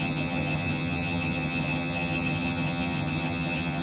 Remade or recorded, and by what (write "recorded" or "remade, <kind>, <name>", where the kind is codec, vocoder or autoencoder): remade, vocoder, HiFi-GAN